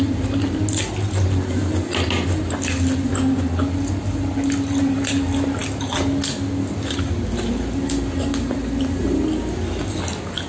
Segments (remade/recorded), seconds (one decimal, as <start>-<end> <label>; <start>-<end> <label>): 0.0-10.5 recorded